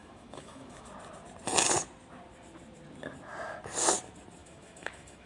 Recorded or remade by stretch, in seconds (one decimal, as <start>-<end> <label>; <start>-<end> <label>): 0.0-0.9 remade; 0.9-4.4 recorded; 4.4-5.3 remade